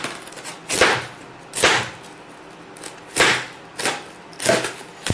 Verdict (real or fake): real